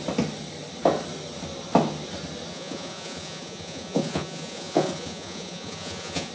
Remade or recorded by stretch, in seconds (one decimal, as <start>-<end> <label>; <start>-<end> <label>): 0.0-2.5 recorded; 2.5-6.3 remade